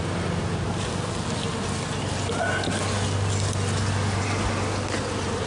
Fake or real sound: real